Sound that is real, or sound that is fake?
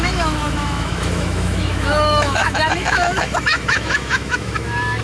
fake